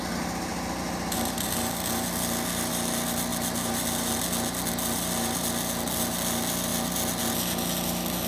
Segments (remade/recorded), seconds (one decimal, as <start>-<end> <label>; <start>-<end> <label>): 0.0-8.3 recorded